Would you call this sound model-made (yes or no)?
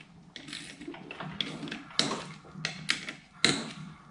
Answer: no